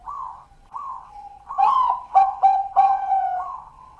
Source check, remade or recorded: remade